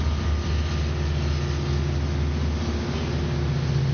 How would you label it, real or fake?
real